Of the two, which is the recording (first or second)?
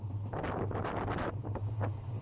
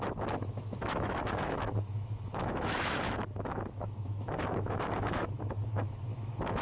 first